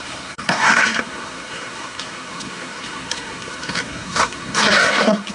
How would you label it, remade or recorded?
remade